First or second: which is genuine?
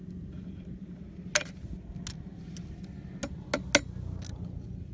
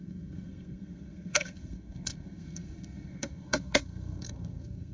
first